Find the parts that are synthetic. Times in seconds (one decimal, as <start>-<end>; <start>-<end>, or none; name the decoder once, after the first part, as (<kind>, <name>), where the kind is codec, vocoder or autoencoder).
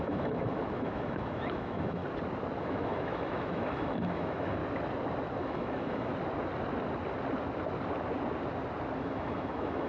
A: 0.0-2.0 (autoencoder, DAC-VAE); 2.6-4.6; 5.4-6.1; 9.0-9.9